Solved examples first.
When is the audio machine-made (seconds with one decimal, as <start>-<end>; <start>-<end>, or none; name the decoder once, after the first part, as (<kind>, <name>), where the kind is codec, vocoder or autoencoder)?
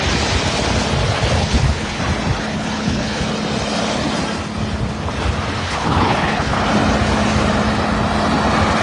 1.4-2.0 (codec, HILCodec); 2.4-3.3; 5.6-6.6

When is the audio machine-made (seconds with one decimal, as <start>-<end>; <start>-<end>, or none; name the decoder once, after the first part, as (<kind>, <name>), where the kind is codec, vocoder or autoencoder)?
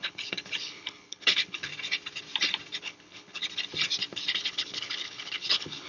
0.0-1.7 (codec, HILCodec); 2.8-3.4; 4.4-5.9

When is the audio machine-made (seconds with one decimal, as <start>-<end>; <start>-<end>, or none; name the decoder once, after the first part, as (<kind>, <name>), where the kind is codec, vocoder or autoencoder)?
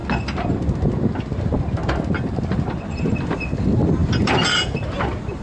none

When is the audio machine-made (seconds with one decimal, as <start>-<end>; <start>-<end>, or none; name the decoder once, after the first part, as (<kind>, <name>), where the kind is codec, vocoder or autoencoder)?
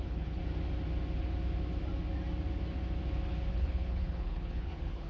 0.0-0.4 (codec, HILCodec); 3.5-5.1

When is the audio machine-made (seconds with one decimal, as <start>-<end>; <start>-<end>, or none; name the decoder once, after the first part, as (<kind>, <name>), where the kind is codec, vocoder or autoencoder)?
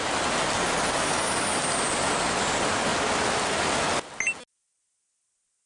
none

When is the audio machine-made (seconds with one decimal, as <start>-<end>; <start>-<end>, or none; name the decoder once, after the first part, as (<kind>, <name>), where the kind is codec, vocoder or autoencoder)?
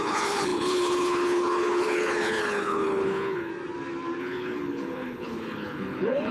0.0-3.5 (codec, HILCodec); 4.2-6.3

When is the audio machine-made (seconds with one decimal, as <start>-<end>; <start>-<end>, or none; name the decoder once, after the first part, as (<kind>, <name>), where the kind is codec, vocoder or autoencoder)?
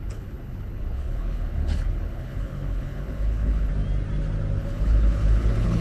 0.0-3.7 (codec, HILCodec); 4.6-5.8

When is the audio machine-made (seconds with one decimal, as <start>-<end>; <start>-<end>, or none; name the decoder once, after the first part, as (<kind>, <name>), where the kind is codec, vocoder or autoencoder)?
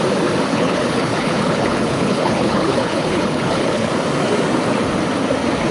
0.5-3.9 (codec, HILCodec)